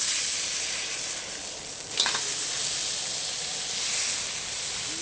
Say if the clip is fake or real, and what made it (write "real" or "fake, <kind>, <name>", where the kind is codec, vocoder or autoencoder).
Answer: real